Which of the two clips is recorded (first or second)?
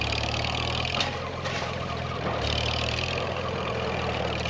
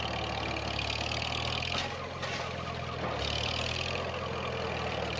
second